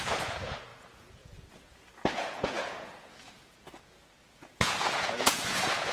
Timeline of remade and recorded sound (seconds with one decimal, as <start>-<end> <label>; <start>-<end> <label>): 0.0-5.9 remade